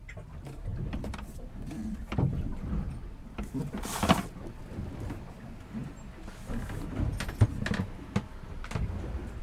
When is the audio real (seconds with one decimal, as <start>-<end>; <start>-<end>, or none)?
0.0-0.7; 4.6-9.4